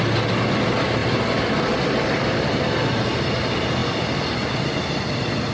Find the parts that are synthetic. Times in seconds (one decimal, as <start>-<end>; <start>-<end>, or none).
none